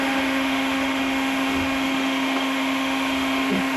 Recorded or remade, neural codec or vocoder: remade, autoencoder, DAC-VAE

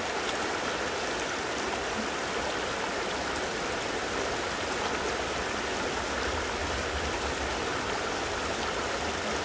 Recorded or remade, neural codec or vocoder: recorded